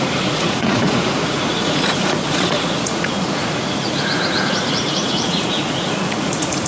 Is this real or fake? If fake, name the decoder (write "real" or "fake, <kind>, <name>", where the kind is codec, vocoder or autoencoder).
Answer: fake, vocoder, Vocos